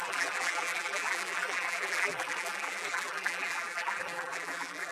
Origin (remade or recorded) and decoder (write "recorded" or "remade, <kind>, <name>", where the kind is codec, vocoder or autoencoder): remade, vocoder, BigVGAN v2